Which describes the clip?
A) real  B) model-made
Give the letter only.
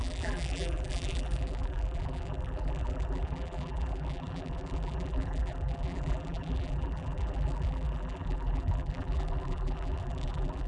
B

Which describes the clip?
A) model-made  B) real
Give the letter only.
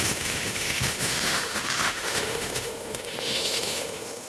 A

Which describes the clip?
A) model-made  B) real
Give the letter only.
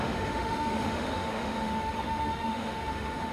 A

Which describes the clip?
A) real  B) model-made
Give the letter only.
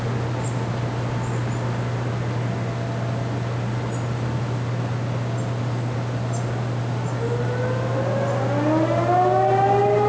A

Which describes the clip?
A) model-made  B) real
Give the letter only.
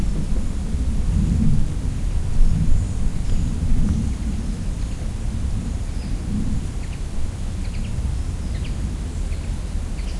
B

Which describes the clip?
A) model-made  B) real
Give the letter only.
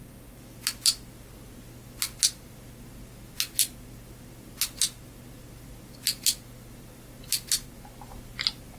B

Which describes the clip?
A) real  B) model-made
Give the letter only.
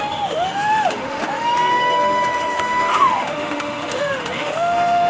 B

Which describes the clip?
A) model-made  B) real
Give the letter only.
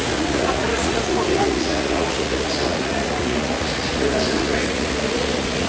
A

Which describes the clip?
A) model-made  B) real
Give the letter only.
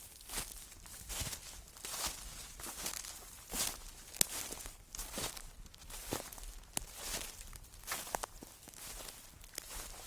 B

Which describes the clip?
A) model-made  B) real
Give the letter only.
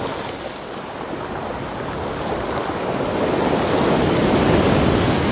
B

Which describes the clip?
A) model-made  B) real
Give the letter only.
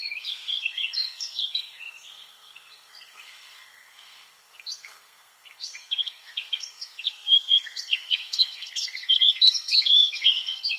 A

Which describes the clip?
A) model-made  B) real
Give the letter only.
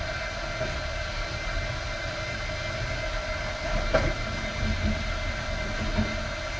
B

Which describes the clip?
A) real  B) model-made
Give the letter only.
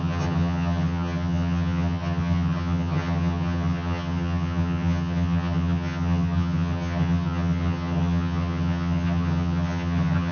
B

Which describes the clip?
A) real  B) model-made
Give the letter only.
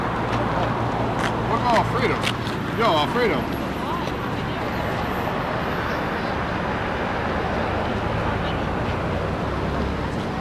A